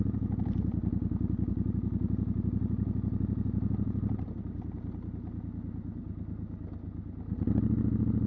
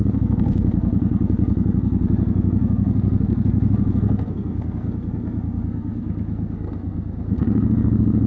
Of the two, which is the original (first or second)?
first